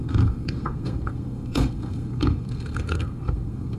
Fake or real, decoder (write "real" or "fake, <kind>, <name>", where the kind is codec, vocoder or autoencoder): fake, codec, SNAC